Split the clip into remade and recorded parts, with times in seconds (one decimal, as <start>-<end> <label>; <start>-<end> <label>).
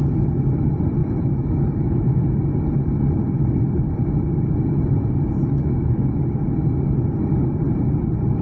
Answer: 0.0-1.0 recorded; 1.0-2.1 remade; 2.1-5.4 recorded; 5.4-6.1 remade; 6.1-8.4 recorded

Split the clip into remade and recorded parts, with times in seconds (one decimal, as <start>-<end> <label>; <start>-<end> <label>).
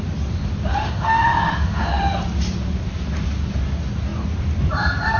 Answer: 0.0-0.7 recorded; 0.7-2.0 remade; 2.0-5.2 recorded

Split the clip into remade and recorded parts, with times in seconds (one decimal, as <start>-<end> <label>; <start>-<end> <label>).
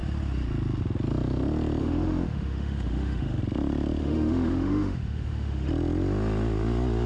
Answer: 0.0-1.8 recorded; 1.8-3.4 remade; 3.4-4.0 recorded; 4.0-5.7 remade; 5.7-7.1 recorded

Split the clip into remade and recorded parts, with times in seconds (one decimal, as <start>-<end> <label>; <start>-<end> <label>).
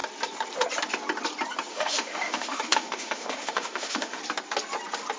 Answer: 0.0-1.7 recorded; 1.7-4.2 remade; 4.2-5.2 recorded